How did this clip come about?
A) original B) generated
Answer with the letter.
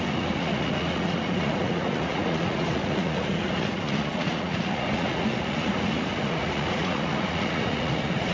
B